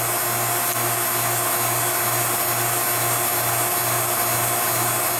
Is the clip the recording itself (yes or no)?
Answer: yes